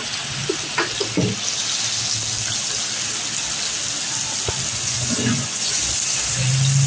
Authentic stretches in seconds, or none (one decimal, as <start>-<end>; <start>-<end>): 0.0-4.7; 5.9-6.9